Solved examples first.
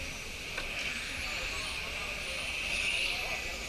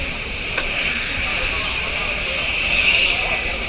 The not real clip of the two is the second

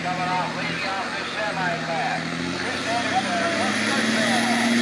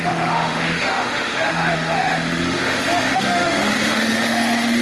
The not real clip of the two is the second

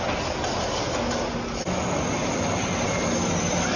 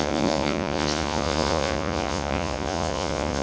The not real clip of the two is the second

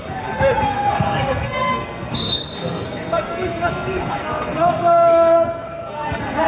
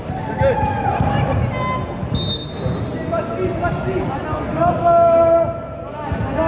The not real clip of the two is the first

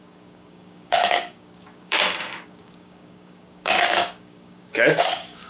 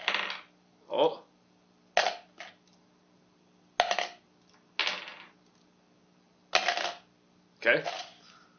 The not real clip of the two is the first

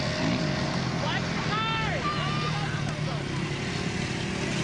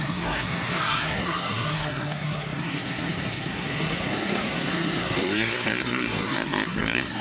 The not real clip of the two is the second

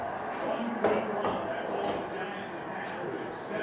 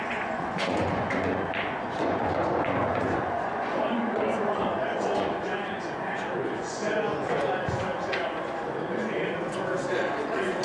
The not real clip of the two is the second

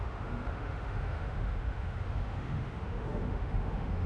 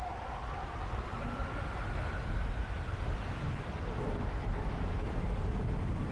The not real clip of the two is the first